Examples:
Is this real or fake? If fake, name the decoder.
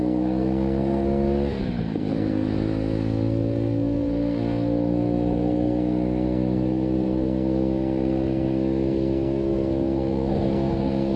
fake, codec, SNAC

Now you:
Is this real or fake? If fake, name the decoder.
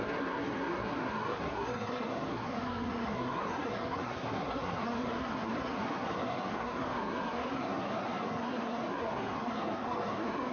fake, codec, SNAC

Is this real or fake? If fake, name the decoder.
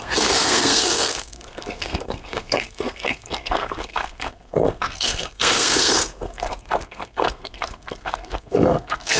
fake, codec, SNAC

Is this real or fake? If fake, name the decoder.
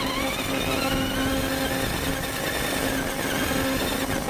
real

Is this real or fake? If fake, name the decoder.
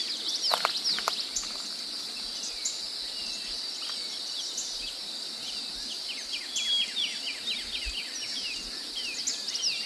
real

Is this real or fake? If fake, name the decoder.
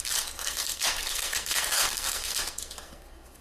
fake, codec, SNAC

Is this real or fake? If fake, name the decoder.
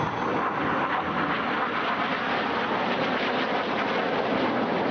real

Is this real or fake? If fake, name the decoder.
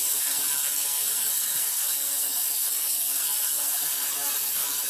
fake, codec, SNAC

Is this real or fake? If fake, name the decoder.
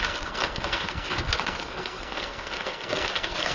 fake, codec, SNAC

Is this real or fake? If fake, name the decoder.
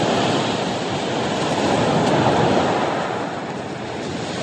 real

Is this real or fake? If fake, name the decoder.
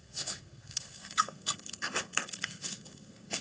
fake, codec, SNAC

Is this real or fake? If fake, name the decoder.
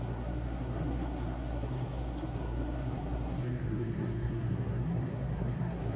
fake, codec, SNAC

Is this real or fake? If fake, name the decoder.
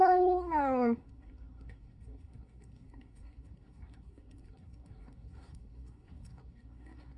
fake, codec, SNAC